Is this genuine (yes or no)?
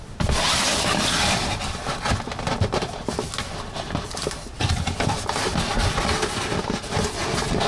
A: yes